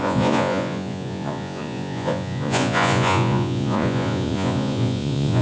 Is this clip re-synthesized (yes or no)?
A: yes